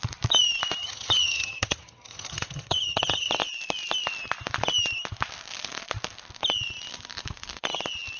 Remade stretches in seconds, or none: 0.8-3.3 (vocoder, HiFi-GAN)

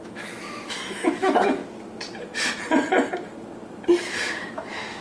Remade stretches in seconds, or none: 0.0-1.6 (autoencoder, DAC-VAE); 4.1-5.0

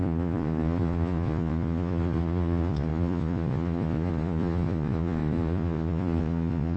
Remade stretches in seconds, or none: 0.0-6.8 (vocoder, Vocos)